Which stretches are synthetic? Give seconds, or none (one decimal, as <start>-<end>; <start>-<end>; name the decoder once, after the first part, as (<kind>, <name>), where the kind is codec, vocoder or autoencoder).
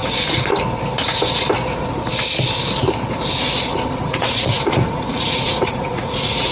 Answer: 3.9-6.5 (vocoder, Vocos)